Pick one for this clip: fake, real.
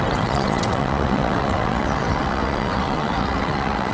fake